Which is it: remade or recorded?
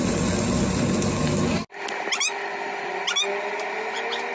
recorded